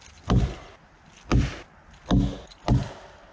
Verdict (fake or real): real